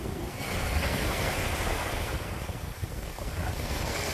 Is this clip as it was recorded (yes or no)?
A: no